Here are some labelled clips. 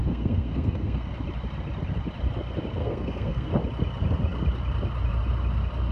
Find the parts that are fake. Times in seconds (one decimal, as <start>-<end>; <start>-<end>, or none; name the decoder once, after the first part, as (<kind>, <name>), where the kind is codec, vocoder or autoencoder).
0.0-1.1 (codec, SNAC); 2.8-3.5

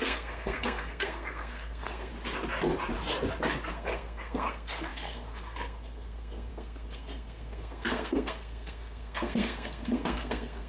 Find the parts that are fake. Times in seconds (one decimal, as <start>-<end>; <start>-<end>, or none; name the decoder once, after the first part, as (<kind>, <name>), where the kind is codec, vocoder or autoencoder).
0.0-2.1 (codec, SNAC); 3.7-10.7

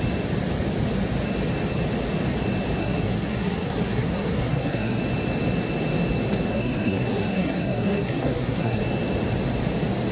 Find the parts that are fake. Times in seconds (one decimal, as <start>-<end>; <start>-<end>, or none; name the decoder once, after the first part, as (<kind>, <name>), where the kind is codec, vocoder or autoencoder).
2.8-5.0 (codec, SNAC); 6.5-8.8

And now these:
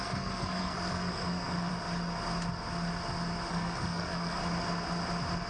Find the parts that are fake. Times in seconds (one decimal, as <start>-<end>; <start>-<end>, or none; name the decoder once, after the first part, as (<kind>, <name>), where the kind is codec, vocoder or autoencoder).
0.0-1.7 (codec, SNAC); 3.5-4.4

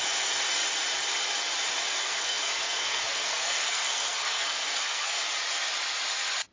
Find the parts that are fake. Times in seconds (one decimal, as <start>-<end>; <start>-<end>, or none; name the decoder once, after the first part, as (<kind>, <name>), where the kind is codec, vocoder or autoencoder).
2.0-5.2 (codec, SNAC)

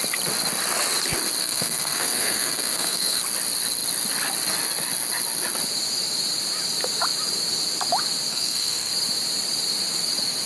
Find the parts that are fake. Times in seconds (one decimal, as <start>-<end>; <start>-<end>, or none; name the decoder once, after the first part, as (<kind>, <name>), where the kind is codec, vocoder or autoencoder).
1.4-3.2 (codec, SNAC); 8.3-8.9

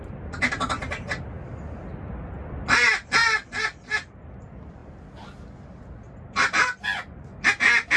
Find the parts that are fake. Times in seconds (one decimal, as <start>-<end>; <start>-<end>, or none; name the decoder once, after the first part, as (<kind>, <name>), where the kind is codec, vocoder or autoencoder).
none

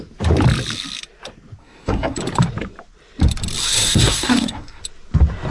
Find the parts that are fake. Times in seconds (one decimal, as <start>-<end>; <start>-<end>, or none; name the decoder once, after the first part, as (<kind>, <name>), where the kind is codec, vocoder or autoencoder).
1.6-2.2 (codec, SNAC); 3.6-4.8